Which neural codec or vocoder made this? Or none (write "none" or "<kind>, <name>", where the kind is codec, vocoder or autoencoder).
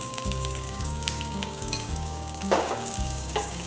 codec, DAC